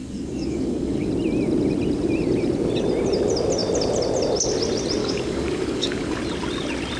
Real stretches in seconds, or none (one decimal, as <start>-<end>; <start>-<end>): 1.1-5.0; 6.2-7.0